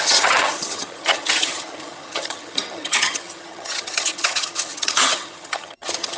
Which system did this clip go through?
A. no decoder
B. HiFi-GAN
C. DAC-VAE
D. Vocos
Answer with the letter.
B